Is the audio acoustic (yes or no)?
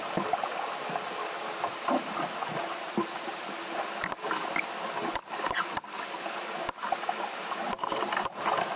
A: yes